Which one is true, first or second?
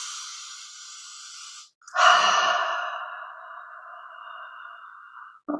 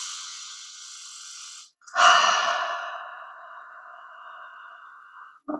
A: first